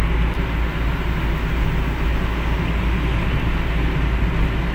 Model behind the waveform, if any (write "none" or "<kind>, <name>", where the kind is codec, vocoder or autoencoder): none